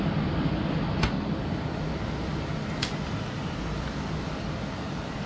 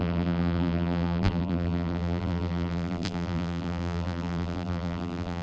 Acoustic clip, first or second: first